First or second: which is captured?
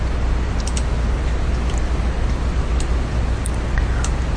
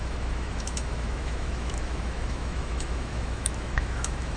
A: first